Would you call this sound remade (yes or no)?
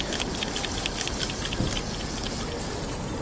no